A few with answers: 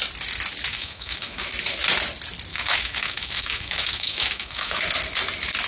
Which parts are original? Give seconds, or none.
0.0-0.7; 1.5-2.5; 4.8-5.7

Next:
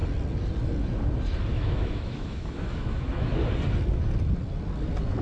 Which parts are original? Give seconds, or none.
0.0-1.5; 3.3-5.2

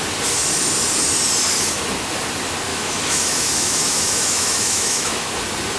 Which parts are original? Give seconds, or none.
0.0-2.7; 5.3-5.8